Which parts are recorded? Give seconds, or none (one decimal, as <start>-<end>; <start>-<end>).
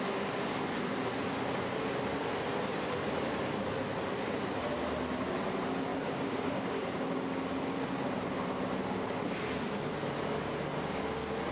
0.0-5.9; 7.6-11.5